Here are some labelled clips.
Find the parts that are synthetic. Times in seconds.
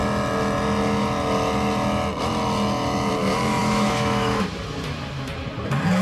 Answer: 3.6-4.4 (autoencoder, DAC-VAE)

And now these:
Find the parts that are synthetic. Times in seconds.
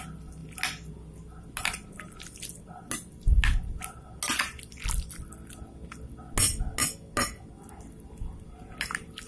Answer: none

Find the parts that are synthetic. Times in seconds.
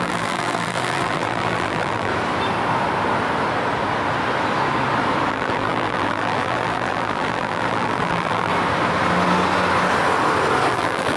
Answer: 0.0-2.1 (vocoder, BigVGAN v2); 5.3-8.5; 10.7-11.2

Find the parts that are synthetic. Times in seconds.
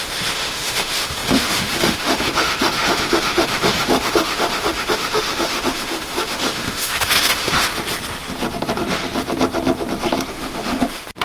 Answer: 0.0-7.7 (autoencoder, DAC-VAE); 10.3-11.2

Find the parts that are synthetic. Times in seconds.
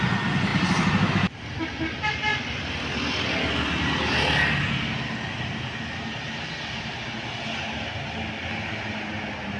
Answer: none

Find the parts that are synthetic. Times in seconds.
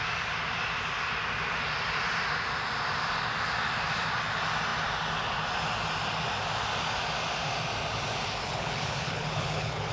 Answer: 8.4-9.9 (codec, HILCodec)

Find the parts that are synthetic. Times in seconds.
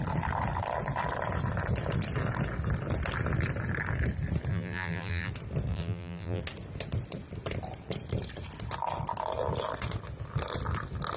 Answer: 4.5-5.3 (vocoder, BigVGAN v2); 5.7-6.4